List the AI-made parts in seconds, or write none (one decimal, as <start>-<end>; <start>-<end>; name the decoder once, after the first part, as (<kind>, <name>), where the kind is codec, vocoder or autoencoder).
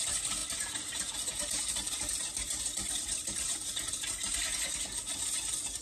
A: none